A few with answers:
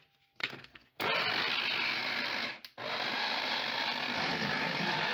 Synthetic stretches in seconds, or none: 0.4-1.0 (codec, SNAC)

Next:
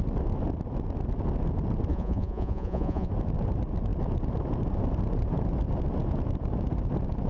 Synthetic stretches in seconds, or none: 1.9-3.1 (vocoder, Vocos)

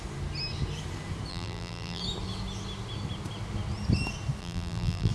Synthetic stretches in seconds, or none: 1.3-2.0 (vocoder, BigVGAN v2); 4.4-5.1

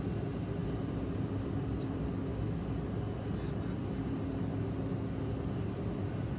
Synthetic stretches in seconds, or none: none

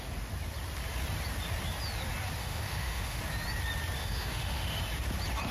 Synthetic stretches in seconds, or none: 2.4-3.2 (autoencoder, DAC-VAE); 4.0-4.8

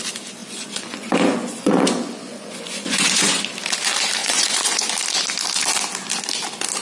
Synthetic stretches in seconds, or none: 0.4-3.4 (vocoder, Vocos); 4.2-4.9

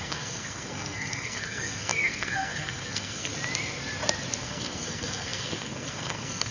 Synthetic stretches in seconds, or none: 0.0-3.3 (codec, SNAC); 4.4-6.5